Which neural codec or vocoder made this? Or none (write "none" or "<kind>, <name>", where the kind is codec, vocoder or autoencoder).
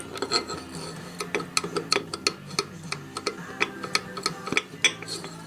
none